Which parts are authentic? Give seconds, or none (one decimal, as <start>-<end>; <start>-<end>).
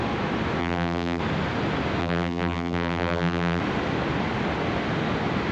0.0-0.6; 1.2-2.0; 3.6-5.5